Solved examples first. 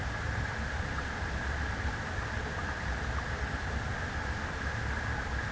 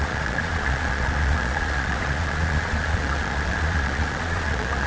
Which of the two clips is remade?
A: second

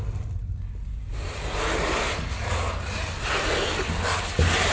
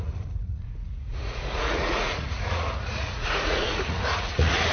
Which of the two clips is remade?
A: second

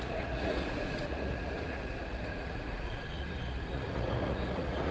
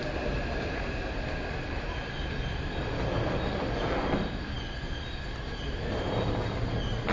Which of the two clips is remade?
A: first